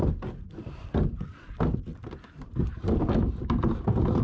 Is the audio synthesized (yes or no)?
yes